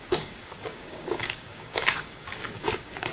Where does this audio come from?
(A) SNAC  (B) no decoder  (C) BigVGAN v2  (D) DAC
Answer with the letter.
D